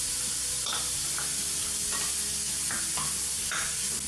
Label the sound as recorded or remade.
recorded